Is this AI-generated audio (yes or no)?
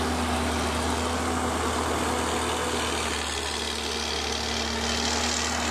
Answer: no